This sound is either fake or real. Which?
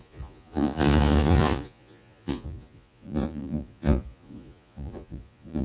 fake